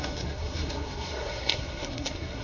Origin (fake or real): fake